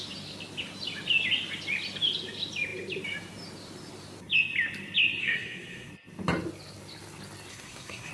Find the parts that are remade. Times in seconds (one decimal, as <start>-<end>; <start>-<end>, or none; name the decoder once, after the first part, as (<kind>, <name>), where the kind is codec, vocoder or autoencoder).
5.2-5.9 (codec, SNAC); 7.5-8.1